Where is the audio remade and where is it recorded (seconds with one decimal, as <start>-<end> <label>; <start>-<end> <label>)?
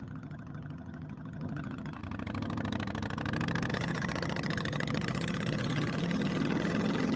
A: 0.0-2.0 remade; 2.0-3.7 recorded; 3.7-7.2 remade